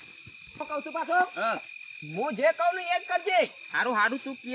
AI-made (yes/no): no